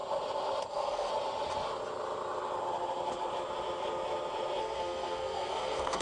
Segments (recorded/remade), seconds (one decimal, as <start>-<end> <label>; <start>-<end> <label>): 0.0-0.7 recorded; 0.7-1.1 remade; 1.1-4.6 recorded; 4.6-6.0 remade